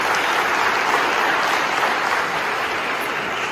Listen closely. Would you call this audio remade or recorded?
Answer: recorded